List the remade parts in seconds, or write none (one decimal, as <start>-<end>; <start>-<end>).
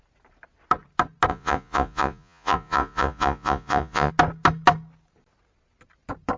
1.3-4.1